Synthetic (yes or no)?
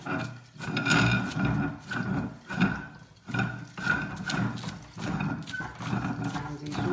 no